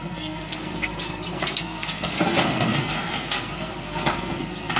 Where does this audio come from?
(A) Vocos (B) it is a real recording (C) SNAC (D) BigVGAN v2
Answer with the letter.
C